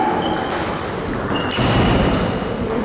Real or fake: real